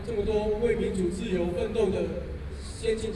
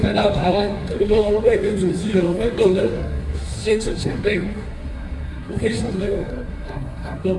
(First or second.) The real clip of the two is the first